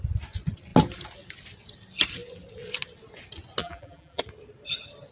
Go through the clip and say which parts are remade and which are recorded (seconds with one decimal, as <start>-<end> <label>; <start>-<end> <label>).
0.0-3.6 recorded; 3.6-4.2 remade; 4.2-5.1 recorded